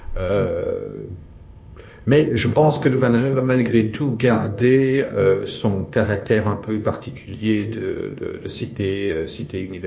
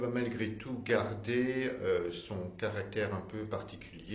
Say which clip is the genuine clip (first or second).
second